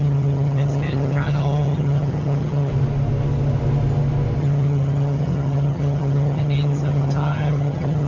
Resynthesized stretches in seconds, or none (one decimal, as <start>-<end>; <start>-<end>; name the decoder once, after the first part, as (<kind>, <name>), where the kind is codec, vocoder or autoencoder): 0.0-2.7 (vocoder, HiFi-GAN); 4.4-8.1